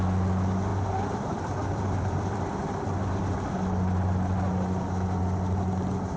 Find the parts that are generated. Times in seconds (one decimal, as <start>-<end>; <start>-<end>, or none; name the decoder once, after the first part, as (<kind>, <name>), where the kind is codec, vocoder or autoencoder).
0.7-3.1 (vocoder, BigVGAN v2)